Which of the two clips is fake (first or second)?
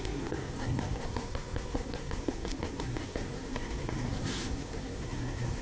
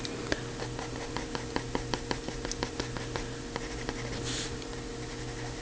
first